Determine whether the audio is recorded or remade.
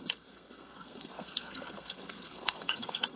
remade